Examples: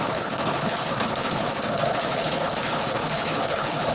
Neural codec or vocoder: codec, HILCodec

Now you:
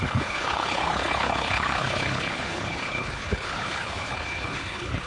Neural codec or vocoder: codec, HILCodec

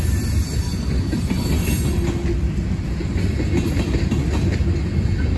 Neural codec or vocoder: none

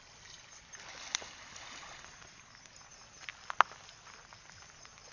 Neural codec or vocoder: none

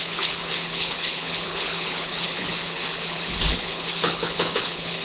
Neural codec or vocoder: codec, HILCodec